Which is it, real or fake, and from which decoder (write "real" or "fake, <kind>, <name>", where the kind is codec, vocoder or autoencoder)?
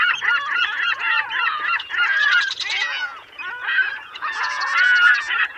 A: fake, vocoder, Vocos